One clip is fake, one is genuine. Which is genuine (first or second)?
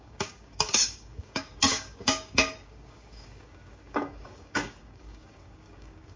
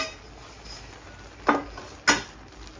second